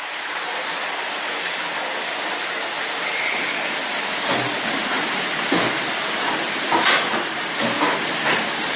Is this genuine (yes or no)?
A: yes